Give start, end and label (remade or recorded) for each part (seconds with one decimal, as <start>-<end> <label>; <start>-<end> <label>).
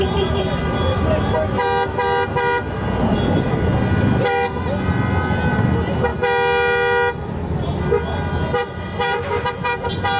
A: 0.0-10.2 recorded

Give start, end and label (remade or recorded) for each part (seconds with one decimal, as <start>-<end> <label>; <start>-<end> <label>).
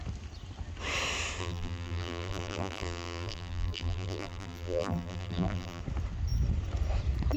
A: 0.0-1.4 recorded; 1.4-5.8 remade; 5.8-7.4 recorded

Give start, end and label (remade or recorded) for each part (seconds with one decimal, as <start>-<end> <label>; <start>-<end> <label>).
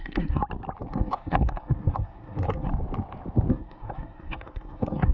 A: 0.0-0.4 remade; 0.4-0.9 recorded; 0.9-2.7 remade; 2.7-3.5 recorded; 3.5-5.1 remade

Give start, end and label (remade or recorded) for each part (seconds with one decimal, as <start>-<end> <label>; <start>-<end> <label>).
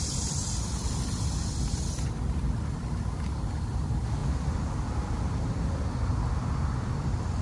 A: 0.0-7.4 recorded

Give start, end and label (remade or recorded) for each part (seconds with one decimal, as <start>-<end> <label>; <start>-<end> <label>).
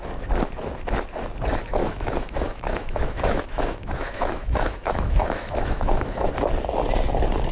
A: 0.0-1.8 recorded; 1.8-6.3 remade; 6.3-7.5 recorded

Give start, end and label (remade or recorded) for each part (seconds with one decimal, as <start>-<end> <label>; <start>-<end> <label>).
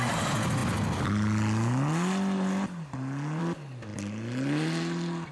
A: 0.0-5.3 recorded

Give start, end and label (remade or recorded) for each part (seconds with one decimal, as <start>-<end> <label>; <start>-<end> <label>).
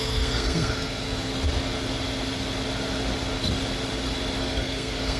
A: 0.0-1.3 remade; 1.3-4.4 recorded; 4.4-5.2 remade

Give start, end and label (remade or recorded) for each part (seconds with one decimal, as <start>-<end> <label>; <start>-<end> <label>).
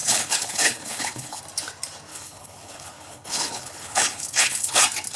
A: 0.0-1.4 remade; 1.4-2.1 recorded; 2.1-4.8 remade; 4.8-5.2 recorded